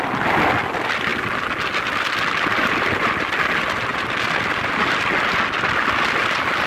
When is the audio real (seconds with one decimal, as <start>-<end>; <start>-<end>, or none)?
0.0-6.7